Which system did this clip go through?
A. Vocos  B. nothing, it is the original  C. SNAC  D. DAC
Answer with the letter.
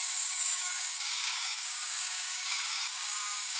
D